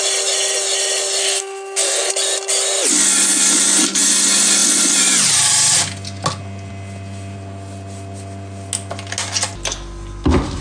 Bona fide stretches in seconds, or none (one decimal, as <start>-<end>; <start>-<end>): 0.0-1.2; 2.1-10.6